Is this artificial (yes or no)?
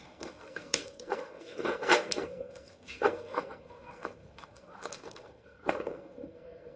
yes